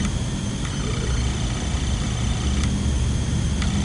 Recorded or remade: recorded